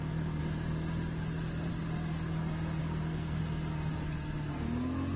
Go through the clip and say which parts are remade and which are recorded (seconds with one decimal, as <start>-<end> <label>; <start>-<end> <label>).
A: 0.0-2.8 recorded; 2.8-3.4 remade; 3.4-5.2 recorded